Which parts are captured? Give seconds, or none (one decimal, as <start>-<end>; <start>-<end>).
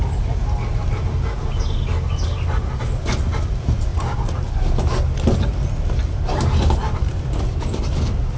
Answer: 0.0-8.4